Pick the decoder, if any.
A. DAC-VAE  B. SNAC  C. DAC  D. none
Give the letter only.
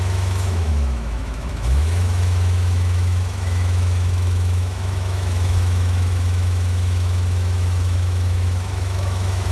A